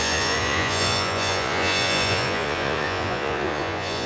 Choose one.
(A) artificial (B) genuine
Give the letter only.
A